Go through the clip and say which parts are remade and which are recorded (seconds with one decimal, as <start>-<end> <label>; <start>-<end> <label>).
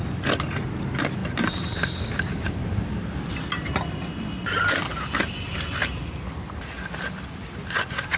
0.0-8.2 recorded